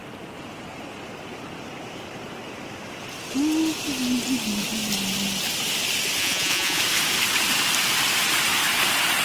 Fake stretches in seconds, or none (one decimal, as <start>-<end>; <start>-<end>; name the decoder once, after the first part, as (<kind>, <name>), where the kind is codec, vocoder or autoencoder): 6.2-6.8 (vocoder, Vocos)